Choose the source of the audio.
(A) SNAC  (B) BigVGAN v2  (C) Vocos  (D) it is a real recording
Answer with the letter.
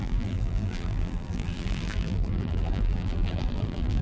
B